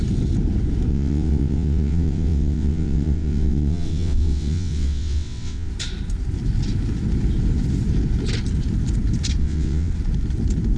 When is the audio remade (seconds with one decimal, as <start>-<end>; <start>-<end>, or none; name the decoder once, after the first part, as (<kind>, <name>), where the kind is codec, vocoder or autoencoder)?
0.9-5.7 (vocoder, WaveNeXt); 9.4-9.9